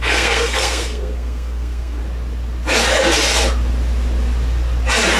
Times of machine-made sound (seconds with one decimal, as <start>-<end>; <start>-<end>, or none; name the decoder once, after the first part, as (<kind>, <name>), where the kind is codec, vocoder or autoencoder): 0.0-2.0 (codec, SNAC)